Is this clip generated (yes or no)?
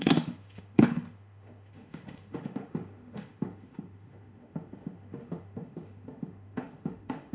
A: yes